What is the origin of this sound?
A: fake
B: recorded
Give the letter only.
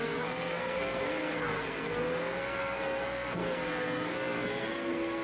A